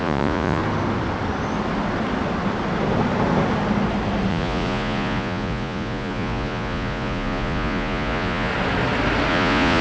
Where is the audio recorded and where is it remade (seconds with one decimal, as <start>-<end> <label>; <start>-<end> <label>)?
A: 0.0-0.6 remade; 0.6-4.3 recorded; 4.3-8.5 remade; 8.5-9.3 recorded; 9.3-9.8 remade